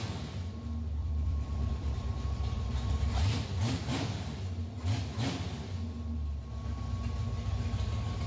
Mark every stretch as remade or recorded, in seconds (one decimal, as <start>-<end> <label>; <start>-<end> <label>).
0.0-1.0 recorded; 1.0-3.6 remade; 3.6-8.3 recorded